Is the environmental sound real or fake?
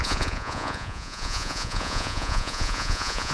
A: fake